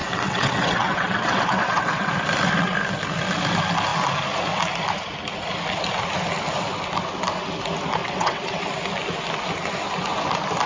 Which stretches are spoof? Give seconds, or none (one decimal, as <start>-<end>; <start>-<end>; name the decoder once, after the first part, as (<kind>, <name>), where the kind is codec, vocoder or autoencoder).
0.0-2.1 (vocoder, WaveNeXt); 8.0-8.6

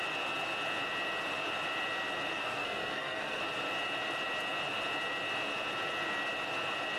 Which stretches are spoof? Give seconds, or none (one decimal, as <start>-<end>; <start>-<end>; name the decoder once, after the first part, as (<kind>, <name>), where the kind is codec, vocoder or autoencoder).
2.3-3.4 (codec, SNAC)